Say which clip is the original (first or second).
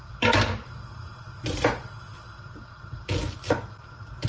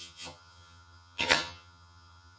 first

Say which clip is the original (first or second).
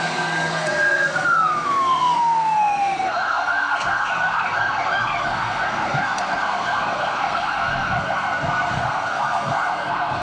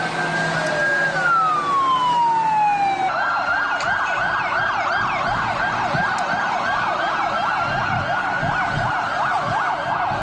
second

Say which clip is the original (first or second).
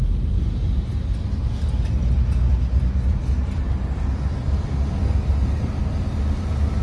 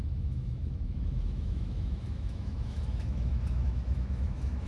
first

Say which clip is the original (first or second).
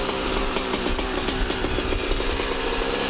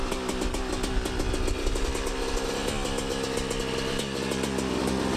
second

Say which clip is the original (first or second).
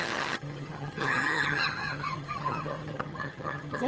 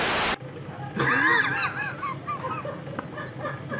second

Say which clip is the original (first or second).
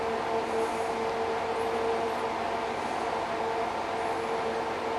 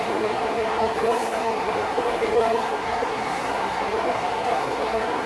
first